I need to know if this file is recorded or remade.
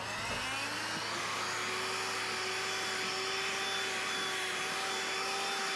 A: recorded